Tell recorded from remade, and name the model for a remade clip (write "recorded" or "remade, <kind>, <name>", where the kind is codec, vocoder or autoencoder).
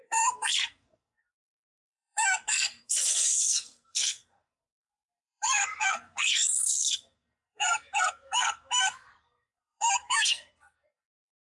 remade, codec, SNAC